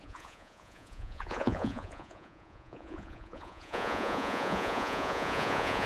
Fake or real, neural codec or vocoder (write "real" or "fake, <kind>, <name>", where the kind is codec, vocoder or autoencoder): fake, vocoder, Vocos